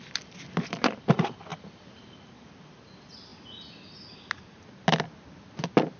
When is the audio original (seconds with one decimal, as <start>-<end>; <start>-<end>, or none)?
0.0-6.0